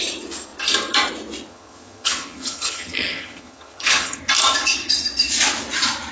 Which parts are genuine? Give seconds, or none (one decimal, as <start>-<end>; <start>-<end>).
0.0-1.5; 4.2-6.1